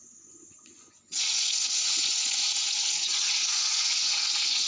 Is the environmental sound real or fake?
fake